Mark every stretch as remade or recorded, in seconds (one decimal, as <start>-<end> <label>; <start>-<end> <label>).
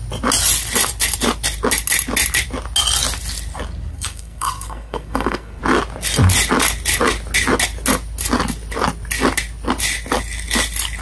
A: 0.0-3.9 recorded; 3.9-5.6 remade; 5.6-11.0 recorded